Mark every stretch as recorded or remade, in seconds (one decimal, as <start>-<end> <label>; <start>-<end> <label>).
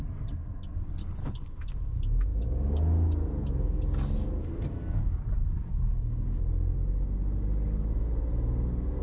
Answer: 0.0-1.0 recorded; 1.0-1.6 remade; 1.6-9.0 recorded